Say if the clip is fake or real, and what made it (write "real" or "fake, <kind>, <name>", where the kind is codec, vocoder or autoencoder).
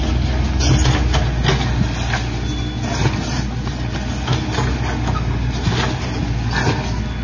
real